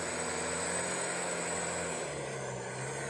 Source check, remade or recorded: recorded